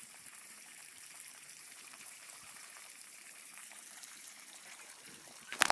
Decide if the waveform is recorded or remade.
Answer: remade